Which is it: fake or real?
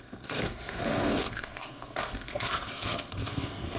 fake